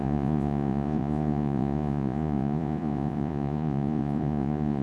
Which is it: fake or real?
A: fake